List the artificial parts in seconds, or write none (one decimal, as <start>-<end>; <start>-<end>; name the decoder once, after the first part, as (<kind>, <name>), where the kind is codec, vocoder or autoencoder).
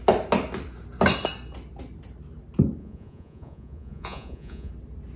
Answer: 2.8-4.7 (vocoder, Vocos)